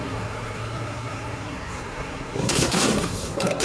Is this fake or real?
fake